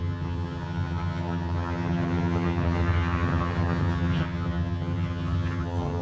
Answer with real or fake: fake